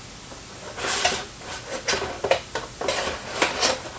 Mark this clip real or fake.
real